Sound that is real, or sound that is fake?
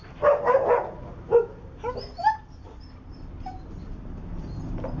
real